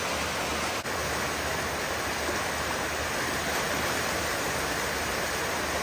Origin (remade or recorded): recorded